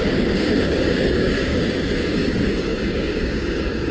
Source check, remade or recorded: remade